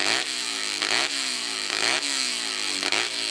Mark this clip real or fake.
fake